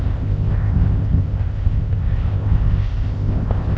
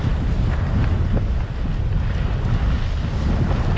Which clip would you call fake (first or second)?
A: first